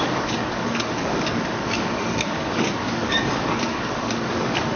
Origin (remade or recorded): remade